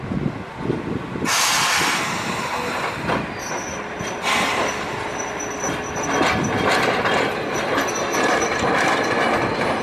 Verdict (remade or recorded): recorded